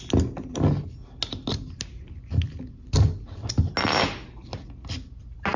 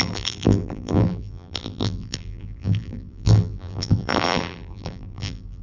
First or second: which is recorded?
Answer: first